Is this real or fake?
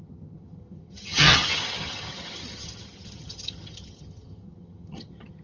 fake